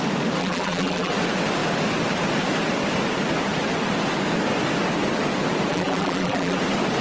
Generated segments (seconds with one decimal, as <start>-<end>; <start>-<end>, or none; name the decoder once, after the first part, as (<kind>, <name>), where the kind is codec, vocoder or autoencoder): 0.4-1.1 (vocoder, BigVGAN v2); 5.7-6.6